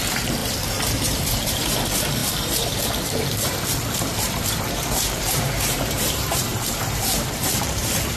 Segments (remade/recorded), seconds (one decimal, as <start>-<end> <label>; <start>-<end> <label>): 0.0-8.2 remade